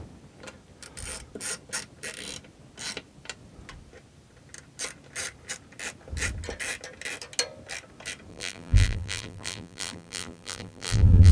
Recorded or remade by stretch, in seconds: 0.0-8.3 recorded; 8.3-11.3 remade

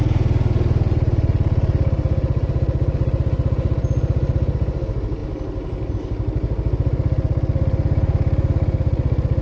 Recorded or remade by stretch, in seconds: 0.0-9.4 recorded

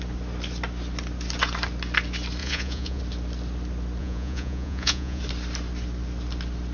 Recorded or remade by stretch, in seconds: 0.0-2.4 recorded; 2.4-3.0 remade; 3.0-4.0 recorded; 4.0-5.2 remade; 5.2-6.7 recorded

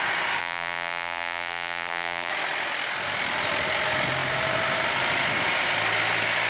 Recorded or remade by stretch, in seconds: 0.0-0.4 recorded; 0.4-2.3 remade; 2.3-6.5 recorded

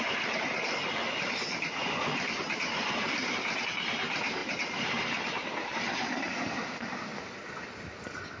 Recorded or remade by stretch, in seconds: 0.0-8.4 recorded

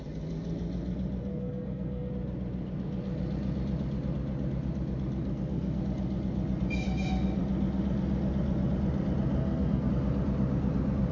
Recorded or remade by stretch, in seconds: 0.0-1.3 recorded; 1.3-2.1 remade; 2.1-5.2 recorded; 5.2-5.8 remade; 5.8-9.4 recorded; 9.4-9.9 remade; 9.9-11.1 recorded

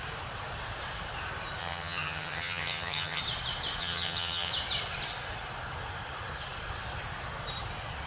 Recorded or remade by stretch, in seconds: 0.0-1.6 recorded; 1.6-3.2 remade; 3.2-3.8 recorded; 3.8-4.5 remade; 4.5-8.1 recorded

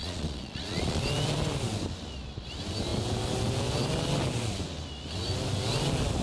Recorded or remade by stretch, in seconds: 0.0-1.0 remade; 1.0-6.2 recorded